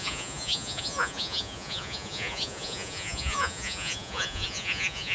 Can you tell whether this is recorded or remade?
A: remade